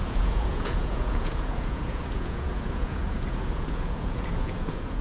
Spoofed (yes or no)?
yes